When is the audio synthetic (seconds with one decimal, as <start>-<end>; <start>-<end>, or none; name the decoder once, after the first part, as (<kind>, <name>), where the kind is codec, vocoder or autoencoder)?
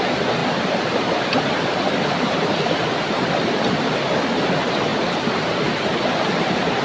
0.4-4.0 (vocoder, BigVGAN v2); 4.9-5.7